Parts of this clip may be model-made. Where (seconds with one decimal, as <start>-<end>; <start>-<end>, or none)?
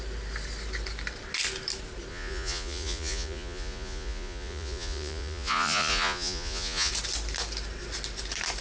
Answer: 2.1-6.9